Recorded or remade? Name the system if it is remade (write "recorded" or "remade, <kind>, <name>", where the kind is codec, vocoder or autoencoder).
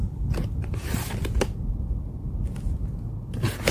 recorded